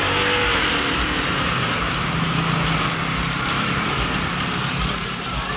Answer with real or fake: real